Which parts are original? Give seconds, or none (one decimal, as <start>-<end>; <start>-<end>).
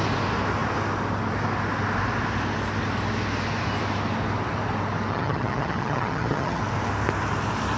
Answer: 0.0-5.1; 6.6-7.8